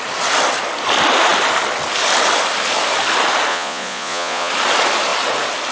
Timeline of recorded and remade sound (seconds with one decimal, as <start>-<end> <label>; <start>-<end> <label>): 0.0-3.5 recorded; 3.5-4.5 remade; 4.5-5.7 recorded